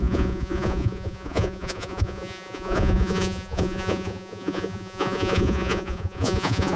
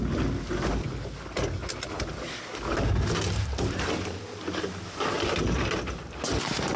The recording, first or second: second